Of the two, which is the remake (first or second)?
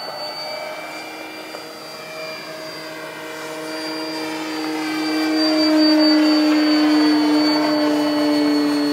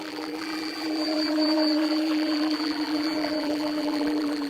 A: second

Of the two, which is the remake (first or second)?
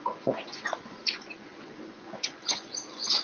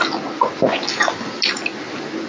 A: first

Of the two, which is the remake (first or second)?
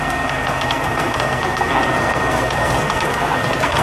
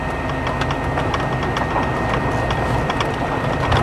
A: first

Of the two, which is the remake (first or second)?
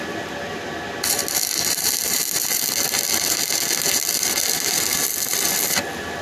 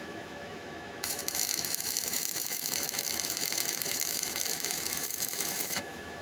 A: second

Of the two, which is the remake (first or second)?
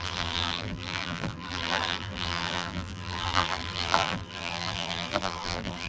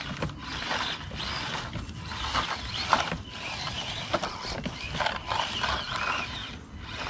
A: first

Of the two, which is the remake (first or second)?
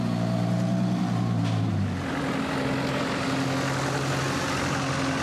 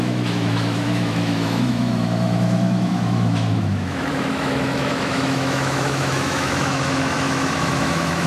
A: second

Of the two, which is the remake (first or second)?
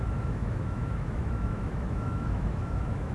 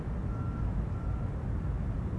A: first